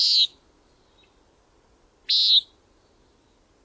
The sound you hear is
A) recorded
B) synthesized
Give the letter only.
A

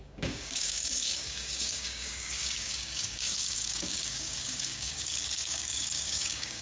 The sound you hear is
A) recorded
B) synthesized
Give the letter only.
B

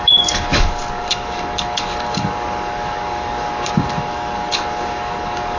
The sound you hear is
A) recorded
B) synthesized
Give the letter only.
B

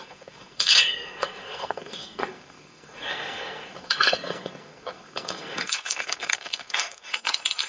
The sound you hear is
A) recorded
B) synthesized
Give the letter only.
B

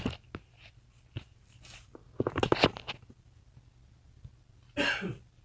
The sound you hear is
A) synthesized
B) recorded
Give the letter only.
B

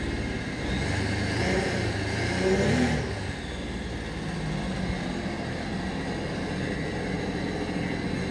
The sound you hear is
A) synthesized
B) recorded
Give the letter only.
B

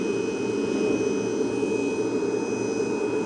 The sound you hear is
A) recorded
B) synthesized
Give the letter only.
A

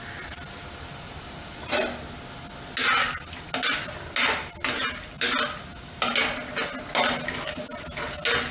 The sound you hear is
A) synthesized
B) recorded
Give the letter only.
B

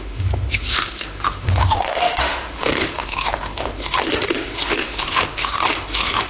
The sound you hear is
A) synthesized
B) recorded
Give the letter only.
A